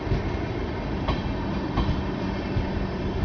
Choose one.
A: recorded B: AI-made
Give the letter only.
B